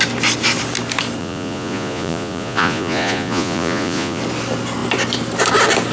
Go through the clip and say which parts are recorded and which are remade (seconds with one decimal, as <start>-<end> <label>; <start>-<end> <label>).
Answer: 0.0-1.2 recorded; 1.2-4.2 remade; 4.2-5.9 recorded